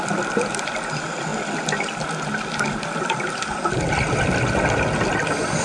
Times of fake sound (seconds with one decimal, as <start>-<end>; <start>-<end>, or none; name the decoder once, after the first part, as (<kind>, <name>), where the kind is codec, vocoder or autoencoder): none